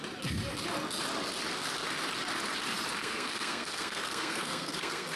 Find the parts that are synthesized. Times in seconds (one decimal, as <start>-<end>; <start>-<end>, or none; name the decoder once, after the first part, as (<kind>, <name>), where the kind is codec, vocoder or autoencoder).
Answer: 3.0-5.2 (codec, SNAC)